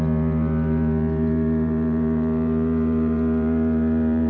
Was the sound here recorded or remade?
remade